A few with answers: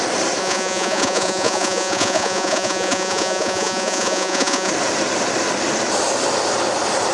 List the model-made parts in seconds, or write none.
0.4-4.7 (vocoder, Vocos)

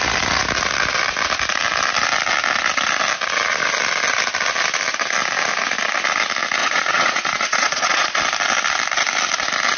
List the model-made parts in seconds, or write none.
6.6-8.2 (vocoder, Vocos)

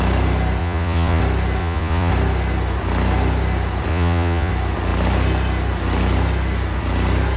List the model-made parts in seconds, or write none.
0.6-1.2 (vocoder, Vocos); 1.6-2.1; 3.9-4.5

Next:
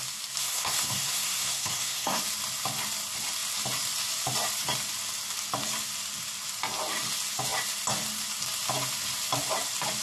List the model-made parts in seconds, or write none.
0.4-2.2 (codec, SNAC)